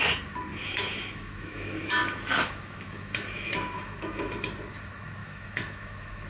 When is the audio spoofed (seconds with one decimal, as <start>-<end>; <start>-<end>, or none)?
0.5-4.2; 5.2-6.3